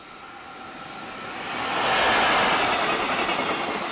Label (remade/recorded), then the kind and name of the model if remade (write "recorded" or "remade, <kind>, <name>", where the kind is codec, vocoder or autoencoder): recorded